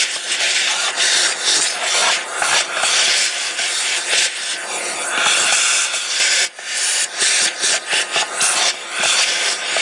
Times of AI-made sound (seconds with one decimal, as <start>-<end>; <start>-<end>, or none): none